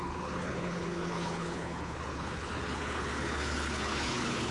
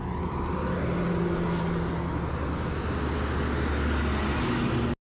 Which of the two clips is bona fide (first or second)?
second